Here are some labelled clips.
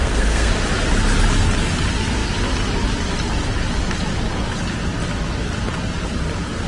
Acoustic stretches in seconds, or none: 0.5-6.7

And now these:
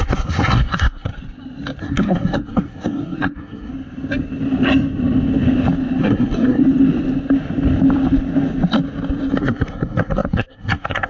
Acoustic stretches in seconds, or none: 1.1-1.8; 3.7-6.0; 6.6-9.4

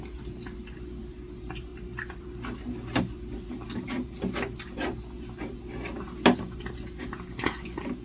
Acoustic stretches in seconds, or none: 0.0-8.0

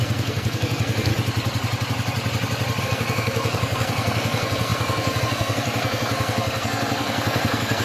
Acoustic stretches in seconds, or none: 1.1-2.8

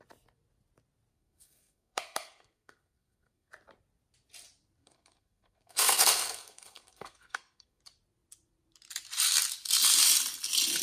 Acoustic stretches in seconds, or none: 0.0-1.1; 3.5-4.8; 7.8-10.8

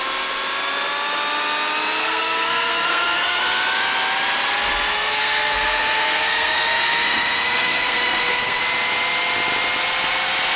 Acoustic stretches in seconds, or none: 0.0-2.0; 3.4-4.9; 8.6-10.6

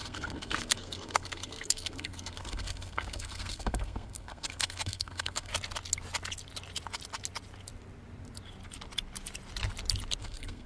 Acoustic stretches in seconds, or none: 5.5-10.2